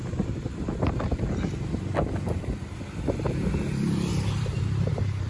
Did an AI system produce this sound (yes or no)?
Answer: yes